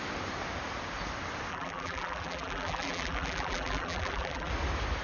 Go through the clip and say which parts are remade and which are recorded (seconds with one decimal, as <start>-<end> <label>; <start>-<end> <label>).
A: 0.0-1.5 recorded; 1.5-4.5 remade; 4.5-5.0 recorded